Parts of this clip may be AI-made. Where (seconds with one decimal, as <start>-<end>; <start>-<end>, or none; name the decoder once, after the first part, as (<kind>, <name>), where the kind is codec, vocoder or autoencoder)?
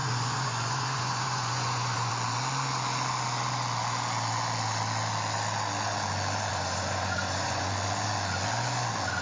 0.0-2.1 (vocoder, Vocos); 6.5-7.7